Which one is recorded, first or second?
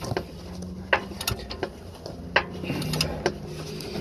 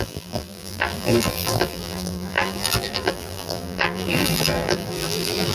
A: first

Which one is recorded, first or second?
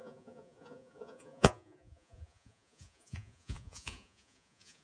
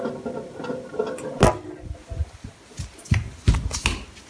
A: second